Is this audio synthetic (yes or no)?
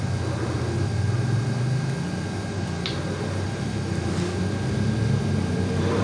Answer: no